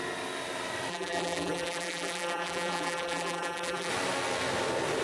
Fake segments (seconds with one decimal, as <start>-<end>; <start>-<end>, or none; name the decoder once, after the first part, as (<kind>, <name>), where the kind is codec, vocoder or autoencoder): 0.9-3.9 (vocoder, BigVGAN v2)